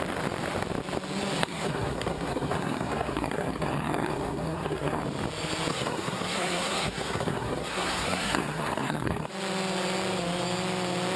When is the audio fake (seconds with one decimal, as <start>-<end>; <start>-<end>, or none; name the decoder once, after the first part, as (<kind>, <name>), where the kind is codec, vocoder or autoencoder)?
1.4-5.0 (codec, SNAC); 5.7-9.3